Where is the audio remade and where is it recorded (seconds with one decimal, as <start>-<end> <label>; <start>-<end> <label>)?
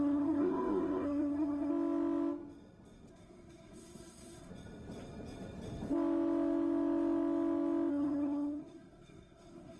0.0-1.7 remade; 1.7-3.1 recorded; 3.1-4.5 remade; 4.5-7.9 recorded; 7.9-9.8 remade